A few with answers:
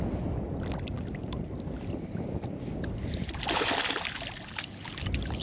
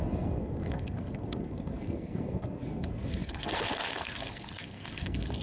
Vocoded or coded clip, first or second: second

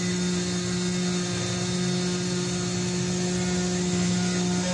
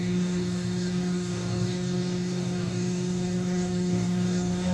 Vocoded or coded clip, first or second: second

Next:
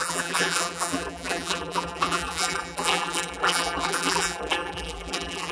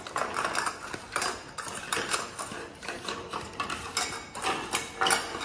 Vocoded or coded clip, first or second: first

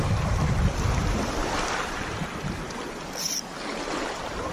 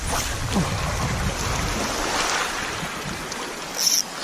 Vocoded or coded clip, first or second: first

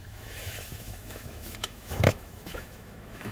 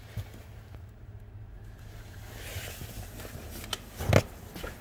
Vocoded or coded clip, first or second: first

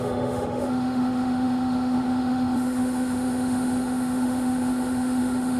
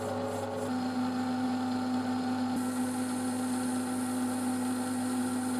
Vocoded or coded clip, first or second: first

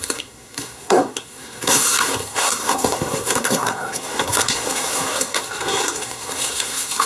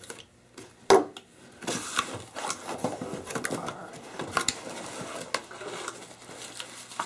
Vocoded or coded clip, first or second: first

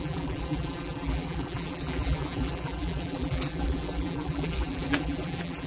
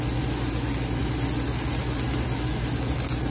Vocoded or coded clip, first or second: first